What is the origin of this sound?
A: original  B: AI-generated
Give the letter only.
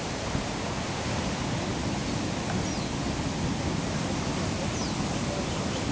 A